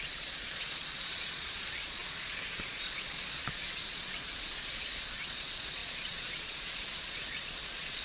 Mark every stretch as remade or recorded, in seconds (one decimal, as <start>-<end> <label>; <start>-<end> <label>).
0.0-8.0 remade